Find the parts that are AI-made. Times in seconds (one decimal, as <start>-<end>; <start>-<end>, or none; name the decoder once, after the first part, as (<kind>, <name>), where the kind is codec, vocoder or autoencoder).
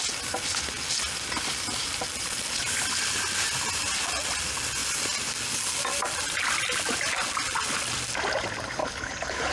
8.8-9.5 (codec, HILCodec)